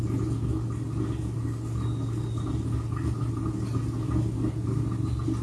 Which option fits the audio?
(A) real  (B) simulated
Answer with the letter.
A